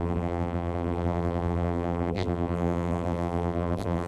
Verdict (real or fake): fake